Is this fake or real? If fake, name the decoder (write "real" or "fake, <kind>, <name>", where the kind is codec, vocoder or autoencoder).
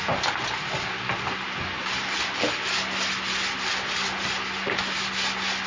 real